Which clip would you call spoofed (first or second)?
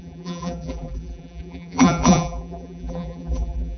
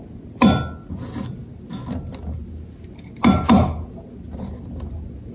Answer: first